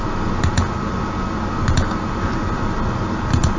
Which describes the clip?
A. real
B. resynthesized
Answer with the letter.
A